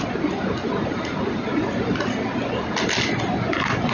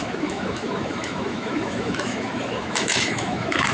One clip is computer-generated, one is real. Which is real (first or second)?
first